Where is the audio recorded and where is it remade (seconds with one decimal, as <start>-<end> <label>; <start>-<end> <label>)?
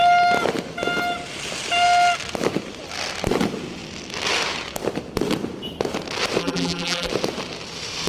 0.0-6.4 recorded; 6.4-7.1 remade; 7.1-8.1 recorded